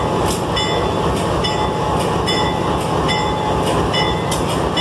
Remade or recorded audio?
recorded